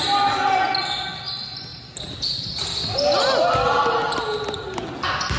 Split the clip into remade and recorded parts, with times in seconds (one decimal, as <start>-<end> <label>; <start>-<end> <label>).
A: 0.0-5.4 recorded